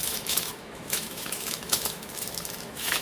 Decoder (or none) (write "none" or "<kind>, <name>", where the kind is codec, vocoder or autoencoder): autoencoder, DAC-VAE